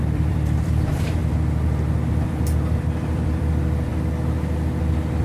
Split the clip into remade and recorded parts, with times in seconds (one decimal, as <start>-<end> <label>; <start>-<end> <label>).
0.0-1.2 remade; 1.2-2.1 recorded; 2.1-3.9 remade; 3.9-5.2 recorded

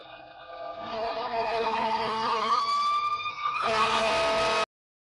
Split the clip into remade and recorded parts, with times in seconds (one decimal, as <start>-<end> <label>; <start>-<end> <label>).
0.0-2.6 remade; 2.6-3.3 recorded; 3.3-4.1 remade; 4.1-5.1 recorded

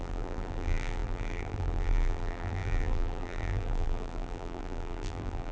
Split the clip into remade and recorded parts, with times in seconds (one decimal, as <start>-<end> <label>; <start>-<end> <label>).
0.0-5.5 remade